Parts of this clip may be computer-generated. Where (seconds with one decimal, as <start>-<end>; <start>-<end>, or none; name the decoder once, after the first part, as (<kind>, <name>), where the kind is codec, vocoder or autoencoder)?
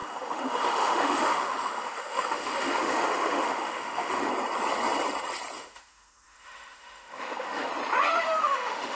0.0-4.3 (autoencoder, DAC-VAE); 5.6-7.7; 8.2-9.0